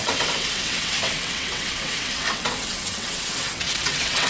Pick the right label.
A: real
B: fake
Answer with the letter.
B